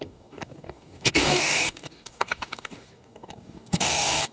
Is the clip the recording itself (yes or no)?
no